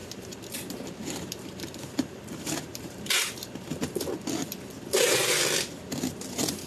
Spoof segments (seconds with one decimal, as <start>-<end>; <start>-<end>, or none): 0.0-4.0